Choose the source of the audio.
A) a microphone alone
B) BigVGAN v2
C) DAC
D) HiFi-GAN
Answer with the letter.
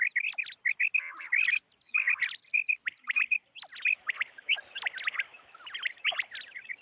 A